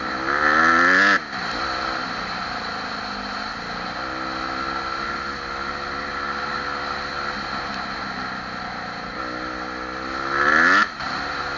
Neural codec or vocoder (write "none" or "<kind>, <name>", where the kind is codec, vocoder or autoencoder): none